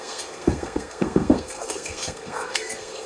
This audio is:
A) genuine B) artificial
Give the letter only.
B